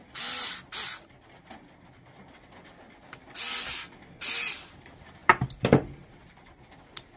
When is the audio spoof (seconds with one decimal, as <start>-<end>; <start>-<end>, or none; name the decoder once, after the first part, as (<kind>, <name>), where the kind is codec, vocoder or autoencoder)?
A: none